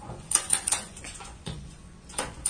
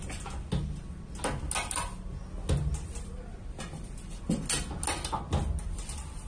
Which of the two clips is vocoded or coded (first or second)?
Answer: first